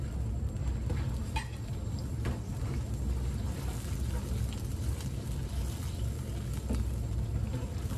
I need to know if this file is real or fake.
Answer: real